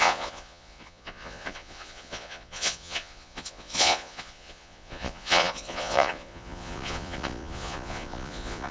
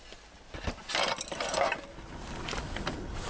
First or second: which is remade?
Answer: first